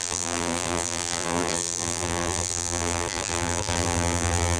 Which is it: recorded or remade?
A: remade